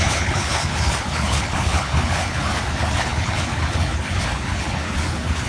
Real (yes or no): no